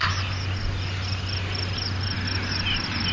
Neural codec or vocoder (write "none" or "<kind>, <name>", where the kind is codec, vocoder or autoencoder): none